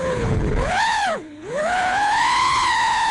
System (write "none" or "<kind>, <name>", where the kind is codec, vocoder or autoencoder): codec, HILCodec